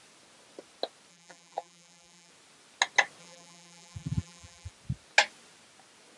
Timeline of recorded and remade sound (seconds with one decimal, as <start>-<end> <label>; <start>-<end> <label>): 0.0-1.1 recorded; 1.1-2.3 remade; 2.3-3.2 recorded; 3.2-4.7 remade; 4.7-6.2 recorded